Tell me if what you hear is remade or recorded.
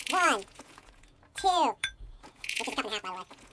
remade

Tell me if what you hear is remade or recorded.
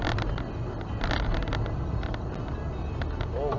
recorded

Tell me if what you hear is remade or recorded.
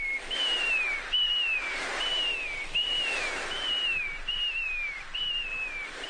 recorded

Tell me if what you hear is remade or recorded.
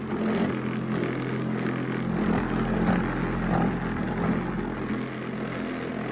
recorded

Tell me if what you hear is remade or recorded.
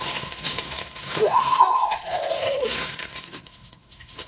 remade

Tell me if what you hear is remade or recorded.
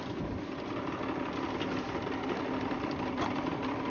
remade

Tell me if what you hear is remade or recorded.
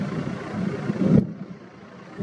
recorded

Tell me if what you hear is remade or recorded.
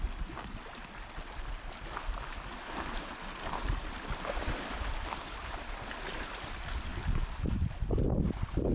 recorded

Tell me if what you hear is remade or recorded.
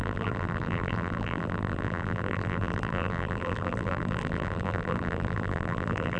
remade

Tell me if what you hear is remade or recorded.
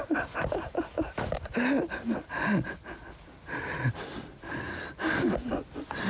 recorded